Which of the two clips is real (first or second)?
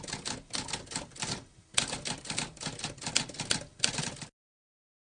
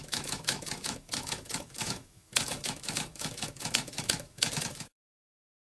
first